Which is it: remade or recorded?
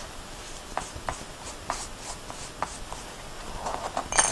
recorded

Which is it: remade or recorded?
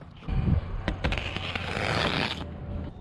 recorded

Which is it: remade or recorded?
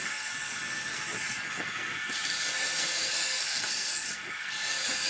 remade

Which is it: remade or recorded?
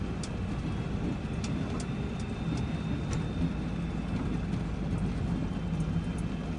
recorded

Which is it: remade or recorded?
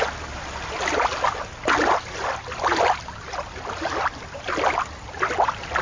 recorded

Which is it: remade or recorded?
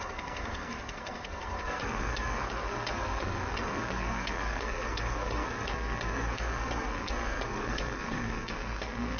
remade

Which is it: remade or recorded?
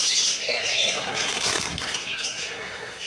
remade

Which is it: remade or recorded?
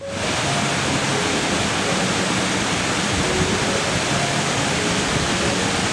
recorded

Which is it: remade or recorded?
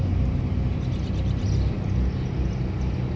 recorded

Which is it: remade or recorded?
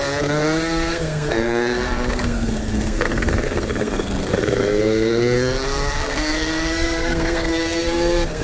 remade